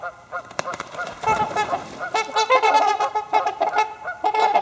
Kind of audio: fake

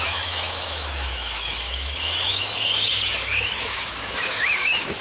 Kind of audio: fake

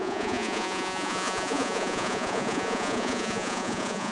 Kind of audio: fake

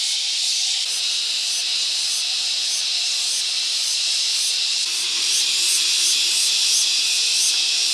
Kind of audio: real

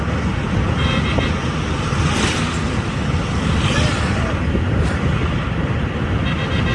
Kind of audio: real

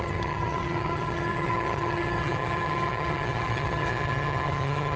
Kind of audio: fake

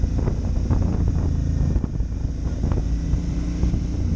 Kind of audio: real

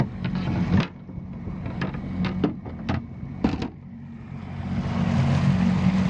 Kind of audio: real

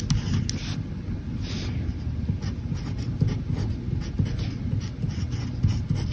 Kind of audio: real